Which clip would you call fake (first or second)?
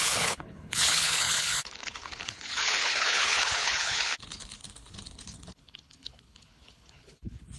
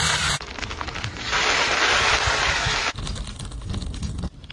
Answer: first